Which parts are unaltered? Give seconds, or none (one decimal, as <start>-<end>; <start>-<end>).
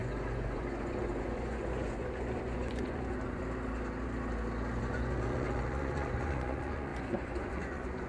3.4-4.8